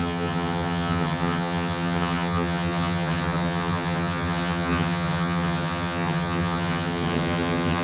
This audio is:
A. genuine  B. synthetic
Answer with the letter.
B